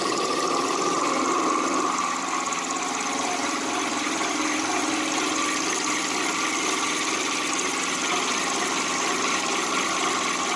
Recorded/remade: remade